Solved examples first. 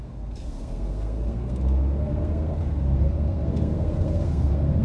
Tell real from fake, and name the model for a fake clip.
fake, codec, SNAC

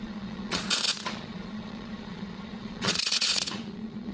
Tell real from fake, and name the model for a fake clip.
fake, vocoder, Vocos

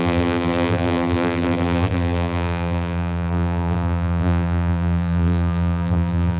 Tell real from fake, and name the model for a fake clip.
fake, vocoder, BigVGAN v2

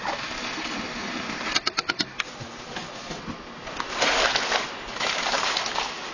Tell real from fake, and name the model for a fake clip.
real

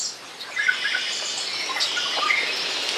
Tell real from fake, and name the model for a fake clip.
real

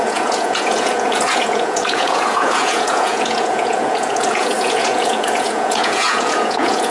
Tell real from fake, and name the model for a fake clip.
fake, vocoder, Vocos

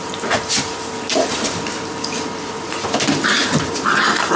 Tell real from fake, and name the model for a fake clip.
fake, vocoder, BigVGAN v2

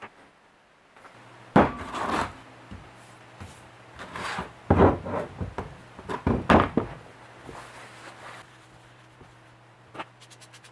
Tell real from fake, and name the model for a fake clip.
real